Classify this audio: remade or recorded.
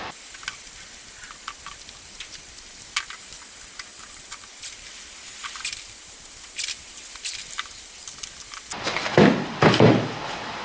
recorded